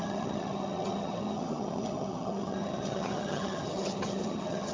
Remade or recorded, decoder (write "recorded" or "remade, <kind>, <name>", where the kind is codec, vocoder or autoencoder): remade, vocoder, HiFi-GAN